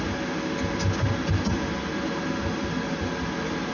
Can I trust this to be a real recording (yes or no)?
yes